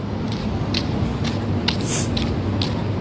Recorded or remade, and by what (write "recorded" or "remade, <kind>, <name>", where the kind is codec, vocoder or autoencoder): recorded